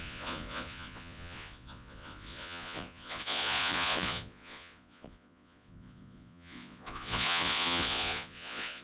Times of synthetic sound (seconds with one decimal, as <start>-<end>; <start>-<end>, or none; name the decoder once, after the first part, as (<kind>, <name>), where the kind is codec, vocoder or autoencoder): 0.0-8.8 (vocoder, Vocos)